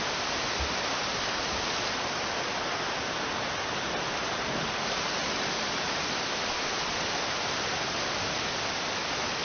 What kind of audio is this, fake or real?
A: real